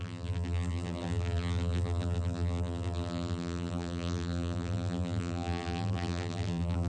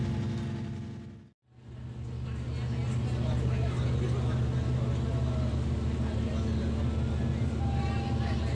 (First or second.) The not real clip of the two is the first